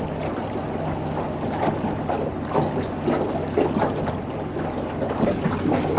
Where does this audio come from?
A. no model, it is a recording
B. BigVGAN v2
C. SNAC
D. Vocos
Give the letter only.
A